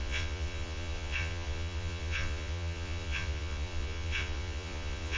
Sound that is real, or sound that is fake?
fake